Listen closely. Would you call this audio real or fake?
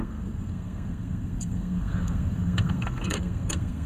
fake